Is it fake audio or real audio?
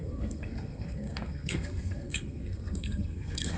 fake